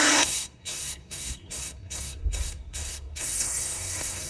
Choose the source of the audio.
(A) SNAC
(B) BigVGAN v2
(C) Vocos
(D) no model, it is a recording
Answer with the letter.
A